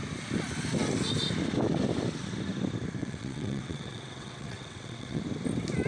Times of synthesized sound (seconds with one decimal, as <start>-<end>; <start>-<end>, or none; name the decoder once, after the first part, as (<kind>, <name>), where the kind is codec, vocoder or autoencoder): 3.0-5.2 (vocoder, WaveNeXt)